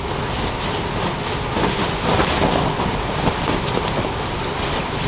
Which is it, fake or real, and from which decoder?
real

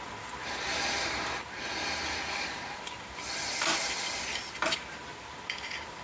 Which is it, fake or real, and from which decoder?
fake, vocoder, BigVGAN v2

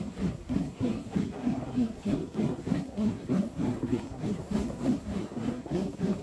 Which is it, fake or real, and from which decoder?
fake, codec, SNAC